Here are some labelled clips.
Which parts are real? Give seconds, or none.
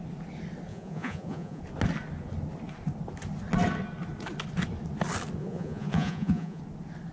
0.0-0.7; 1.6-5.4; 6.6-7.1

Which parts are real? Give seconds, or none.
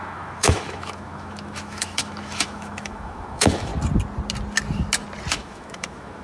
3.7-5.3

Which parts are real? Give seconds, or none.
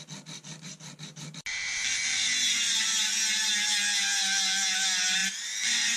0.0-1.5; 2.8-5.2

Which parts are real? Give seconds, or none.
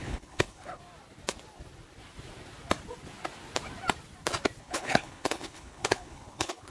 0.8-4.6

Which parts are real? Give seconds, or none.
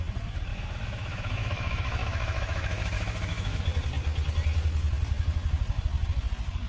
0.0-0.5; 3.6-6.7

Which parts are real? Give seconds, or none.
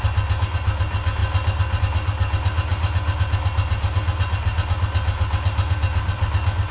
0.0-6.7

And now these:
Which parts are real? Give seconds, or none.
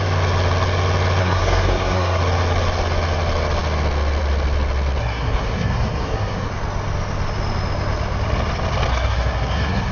0.0-1.2; 2.2-5.0; 6.5-8.9